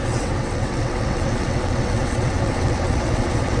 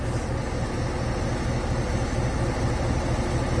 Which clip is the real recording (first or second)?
second